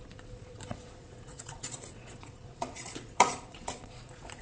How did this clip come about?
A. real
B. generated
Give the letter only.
B